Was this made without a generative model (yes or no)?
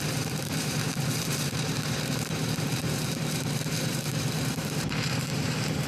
no